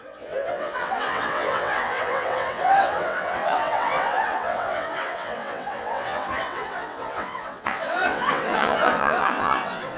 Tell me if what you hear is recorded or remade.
remade